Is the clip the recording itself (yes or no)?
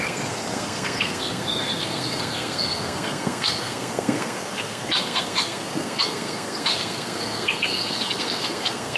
no